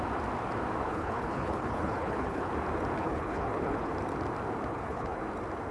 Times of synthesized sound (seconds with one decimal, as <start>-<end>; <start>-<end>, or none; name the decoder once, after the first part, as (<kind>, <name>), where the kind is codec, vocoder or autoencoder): 0.9-2.5 (codec, HILCodec); 3.0-3.9; 4.7-5.2